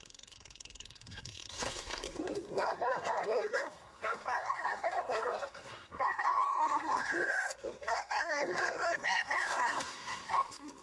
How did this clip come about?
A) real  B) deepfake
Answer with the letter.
B